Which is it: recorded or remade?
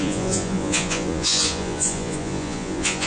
remade